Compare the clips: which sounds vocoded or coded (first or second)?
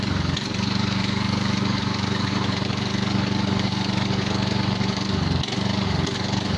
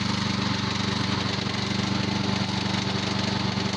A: first